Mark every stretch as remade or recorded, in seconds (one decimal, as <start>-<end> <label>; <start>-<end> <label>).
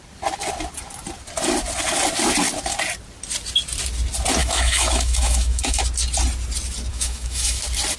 0.0-4.4 recorded; 4.4-5.8 remade; 5.8-6.9 recorded; 6.9-7.6 remade; 7.6-8.0 recorded